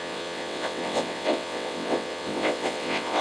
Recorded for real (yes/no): no